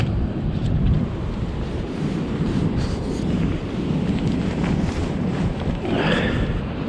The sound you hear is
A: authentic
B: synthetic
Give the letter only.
B